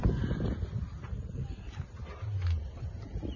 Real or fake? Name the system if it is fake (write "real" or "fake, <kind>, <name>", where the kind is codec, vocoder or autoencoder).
real